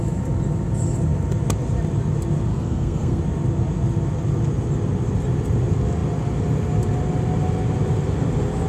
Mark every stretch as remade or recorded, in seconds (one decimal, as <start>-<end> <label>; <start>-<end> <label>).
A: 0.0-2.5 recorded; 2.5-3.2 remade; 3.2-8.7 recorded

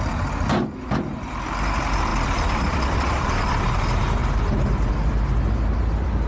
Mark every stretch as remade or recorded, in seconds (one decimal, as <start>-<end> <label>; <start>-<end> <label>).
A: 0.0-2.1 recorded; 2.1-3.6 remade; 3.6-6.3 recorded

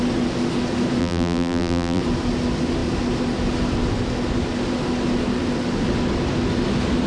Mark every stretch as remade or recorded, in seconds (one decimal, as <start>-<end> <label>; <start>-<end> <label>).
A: 0.0-1.0 recorded; 1.0-2.0 remade; 2.0-7.1 recorded

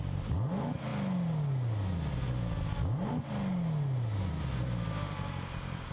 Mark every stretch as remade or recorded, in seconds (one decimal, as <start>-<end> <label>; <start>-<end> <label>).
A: 0.0-5.9 recorded